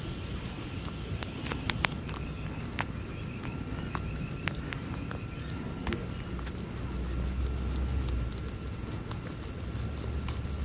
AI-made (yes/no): no